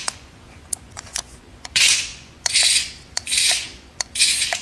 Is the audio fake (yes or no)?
yes